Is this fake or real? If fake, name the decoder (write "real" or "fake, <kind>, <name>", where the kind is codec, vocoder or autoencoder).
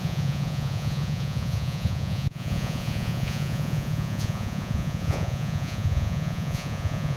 fake, vocoder, Vocos